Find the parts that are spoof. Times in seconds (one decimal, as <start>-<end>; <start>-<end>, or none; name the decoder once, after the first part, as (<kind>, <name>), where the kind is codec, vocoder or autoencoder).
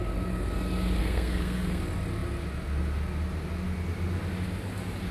1.0-1.8 (codec, SNAC)